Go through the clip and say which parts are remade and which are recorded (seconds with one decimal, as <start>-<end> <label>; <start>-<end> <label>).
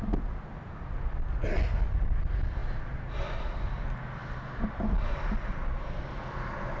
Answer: 0.0-6.8 recorded